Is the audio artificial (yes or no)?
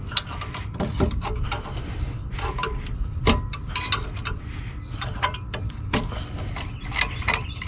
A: no